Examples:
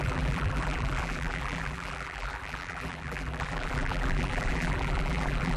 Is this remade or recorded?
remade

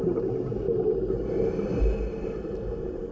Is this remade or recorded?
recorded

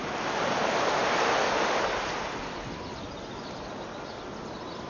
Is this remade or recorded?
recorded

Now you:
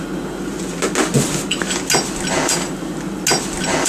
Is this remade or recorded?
recorded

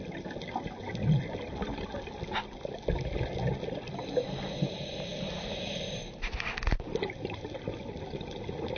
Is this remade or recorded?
recorded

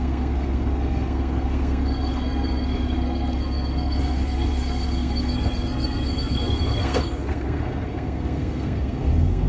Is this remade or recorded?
remade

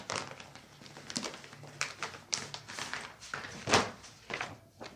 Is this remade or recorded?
recorded